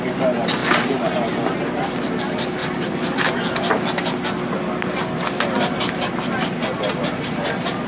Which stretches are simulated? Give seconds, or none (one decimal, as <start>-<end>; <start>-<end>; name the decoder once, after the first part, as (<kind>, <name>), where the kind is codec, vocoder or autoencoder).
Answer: none